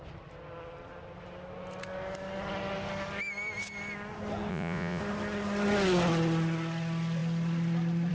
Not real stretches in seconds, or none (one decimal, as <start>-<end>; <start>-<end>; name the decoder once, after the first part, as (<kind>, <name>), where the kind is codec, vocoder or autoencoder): 4.5-5.0 (vocoder, Vocos)